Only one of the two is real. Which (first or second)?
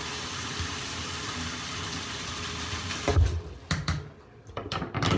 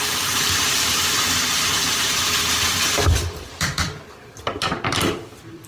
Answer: first